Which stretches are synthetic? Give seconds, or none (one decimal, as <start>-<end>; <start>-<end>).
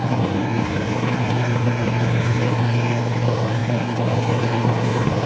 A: 0.0-5.3